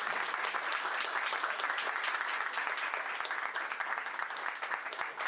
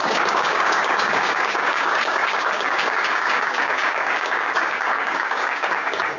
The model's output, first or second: second